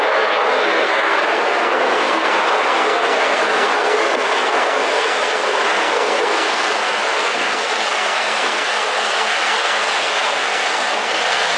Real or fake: fake